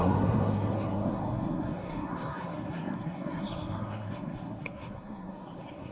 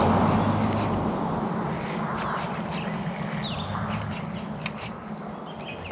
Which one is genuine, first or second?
second